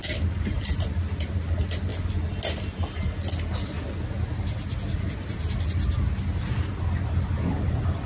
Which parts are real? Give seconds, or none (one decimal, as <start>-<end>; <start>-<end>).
0.0-8.1